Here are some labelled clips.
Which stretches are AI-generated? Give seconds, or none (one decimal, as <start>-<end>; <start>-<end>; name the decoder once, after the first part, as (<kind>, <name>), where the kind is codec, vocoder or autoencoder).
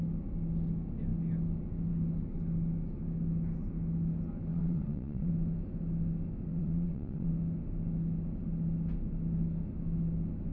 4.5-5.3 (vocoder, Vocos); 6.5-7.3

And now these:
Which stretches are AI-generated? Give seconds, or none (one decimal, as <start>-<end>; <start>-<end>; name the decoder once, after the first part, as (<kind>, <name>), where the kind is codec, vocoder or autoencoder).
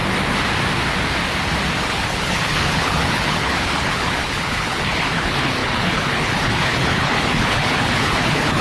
1.8-8.6 (codec, HILCodec)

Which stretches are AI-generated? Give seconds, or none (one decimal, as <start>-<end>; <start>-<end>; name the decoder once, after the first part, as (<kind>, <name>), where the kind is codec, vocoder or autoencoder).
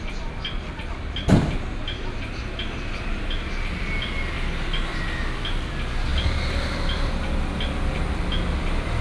none